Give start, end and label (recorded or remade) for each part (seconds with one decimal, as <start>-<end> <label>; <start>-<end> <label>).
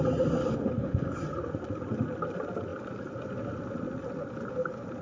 0.0-0.4 recorded; 0.4-1.2 remade; 1.2-5.0 recorded